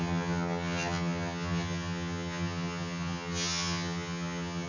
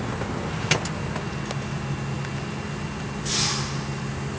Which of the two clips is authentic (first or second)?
second